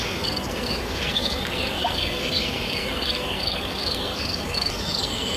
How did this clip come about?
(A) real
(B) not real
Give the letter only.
B